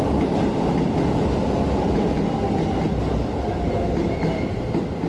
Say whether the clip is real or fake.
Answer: real